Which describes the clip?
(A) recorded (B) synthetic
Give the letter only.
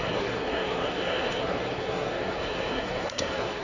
B